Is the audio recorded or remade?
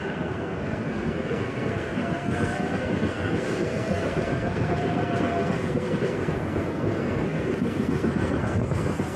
remade